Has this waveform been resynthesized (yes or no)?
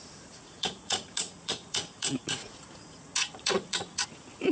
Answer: yes